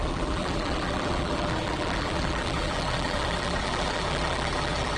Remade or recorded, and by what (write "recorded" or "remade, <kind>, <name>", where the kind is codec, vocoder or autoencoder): remade, vocoder, BigVGAN v2